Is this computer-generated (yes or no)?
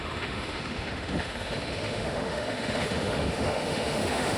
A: yes